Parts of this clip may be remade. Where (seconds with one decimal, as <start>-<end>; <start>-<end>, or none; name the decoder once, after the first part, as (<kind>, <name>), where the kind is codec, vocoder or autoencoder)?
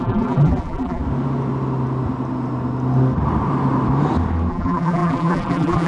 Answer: 0.0-1.0 (vocoder, BigVGAN v2); 4.5-5.9